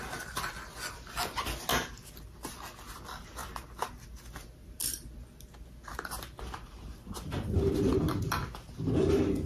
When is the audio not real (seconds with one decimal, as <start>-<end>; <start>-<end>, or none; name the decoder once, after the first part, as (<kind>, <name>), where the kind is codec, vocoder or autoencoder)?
1.7-2.2 (vocoder, BigVGAN v2)